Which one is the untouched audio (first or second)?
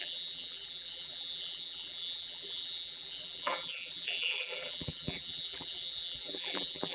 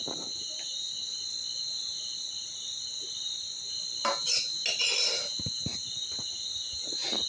second